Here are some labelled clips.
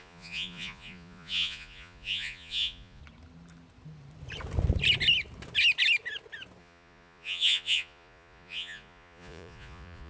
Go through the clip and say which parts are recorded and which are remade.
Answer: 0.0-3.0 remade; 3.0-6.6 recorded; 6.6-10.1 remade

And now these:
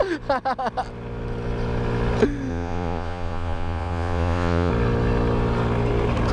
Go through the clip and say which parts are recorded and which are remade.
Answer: 0.0-2.5 recorded; 2.5-4.7 remade; 4.7-6.3 recorded

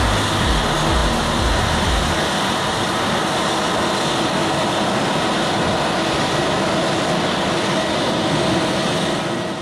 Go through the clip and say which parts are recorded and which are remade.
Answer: 0.0-9.6 recorded